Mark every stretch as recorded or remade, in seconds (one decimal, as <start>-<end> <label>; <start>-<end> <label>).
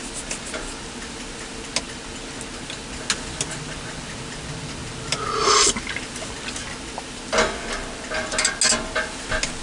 0.0-9.6 recorded